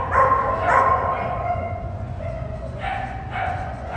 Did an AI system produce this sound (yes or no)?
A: yes